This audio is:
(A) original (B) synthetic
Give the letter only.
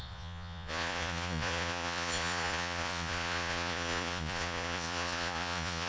B